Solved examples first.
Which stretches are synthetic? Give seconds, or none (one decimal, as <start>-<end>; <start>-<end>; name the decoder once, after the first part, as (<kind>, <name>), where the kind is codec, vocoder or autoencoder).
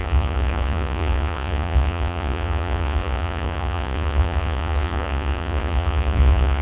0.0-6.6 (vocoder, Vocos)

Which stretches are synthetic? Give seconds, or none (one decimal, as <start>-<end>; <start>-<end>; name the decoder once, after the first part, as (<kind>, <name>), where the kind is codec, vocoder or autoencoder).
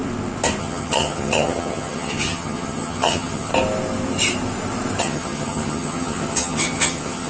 0.6-3.5 (vocoder, HiFi-GAN); 5.0-7.3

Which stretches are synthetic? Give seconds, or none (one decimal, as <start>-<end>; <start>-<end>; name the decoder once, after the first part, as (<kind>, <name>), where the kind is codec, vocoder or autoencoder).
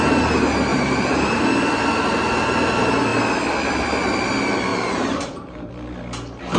0.7-1.4 (vocoder, BigVGAN v2); 4.7-5.7